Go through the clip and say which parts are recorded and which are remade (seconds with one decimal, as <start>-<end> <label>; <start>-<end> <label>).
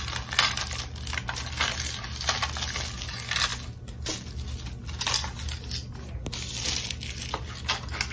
0.0-8.1 recorded